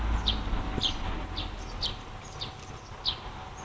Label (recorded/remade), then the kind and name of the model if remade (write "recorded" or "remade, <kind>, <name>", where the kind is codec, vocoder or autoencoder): recorded